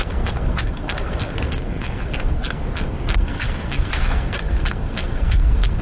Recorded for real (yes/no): no